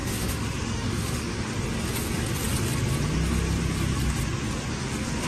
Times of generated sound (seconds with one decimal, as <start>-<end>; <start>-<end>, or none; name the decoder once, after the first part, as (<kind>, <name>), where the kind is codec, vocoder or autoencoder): 0.0-1.5 (autoencoder, DAC-VAE); 4.7-5.3